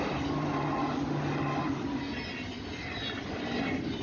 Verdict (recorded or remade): recorded